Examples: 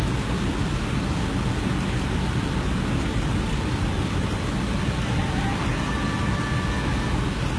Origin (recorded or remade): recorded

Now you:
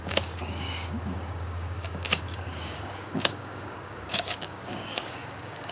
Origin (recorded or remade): remade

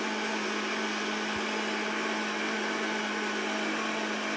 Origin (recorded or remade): recorded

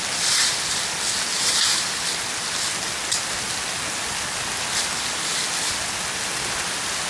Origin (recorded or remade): recorded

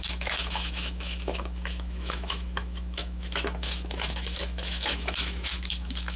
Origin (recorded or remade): remade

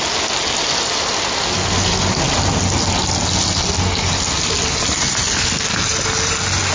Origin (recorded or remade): recorded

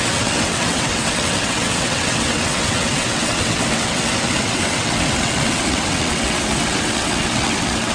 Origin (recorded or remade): remade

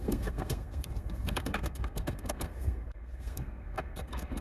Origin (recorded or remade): remade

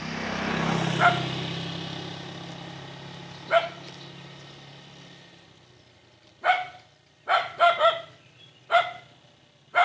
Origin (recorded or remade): recorded